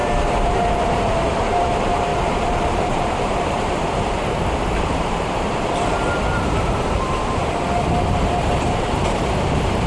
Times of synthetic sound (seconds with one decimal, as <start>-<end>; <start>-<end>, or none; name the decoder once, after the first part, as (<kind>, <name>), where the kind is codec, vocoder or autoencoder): 0.7-2.1 (vocoder, BigVGAN v2); 2.7-7.4; 8.1-9.9